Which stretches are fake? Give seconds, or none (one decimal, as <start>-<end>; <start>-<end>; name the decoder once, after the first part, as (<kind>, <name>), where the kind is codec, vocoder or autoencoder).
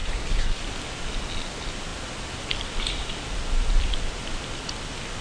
0.0-0.6 (codec, SNAC)